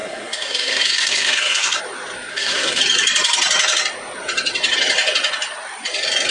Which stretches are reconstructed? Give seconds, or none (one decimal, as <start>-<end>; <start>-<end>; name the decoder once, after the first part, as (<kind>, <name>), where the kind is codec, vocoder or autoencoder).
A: 0.0-1.8 (codec, SNAC); 2.3-2.8

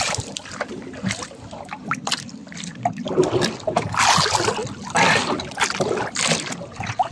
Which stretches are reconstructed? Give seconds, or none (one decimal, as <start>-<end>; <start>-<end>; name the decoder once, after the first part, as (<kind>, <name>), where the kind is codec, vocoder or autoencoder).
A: none

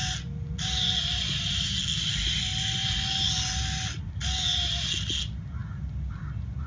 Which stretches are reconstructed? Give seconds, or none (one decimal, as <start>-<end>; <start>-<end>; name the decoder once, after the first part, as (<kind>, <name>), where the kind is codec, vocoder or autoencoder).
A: none

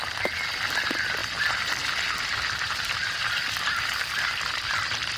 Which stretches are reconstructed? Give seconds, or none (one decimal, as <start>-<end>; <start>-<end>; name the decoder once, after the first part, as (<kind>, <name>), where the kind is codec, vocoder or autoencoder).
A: none

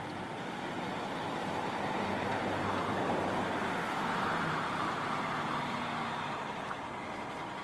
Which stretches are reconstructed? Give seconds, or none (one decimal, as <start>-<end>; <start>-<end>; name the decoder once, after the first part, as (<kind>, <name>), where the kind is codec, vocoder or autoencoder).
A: none